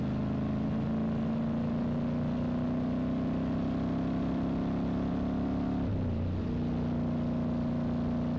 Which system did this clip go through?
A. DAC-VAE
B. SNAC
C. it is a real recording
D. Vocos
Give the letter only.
C